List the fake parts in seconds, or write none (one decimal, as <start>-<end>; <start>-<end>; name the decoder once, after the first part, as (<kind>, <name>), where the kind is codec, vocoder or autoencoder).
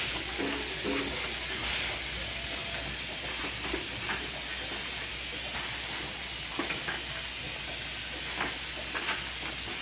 none